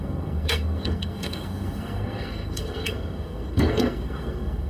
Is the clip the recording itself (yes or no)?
no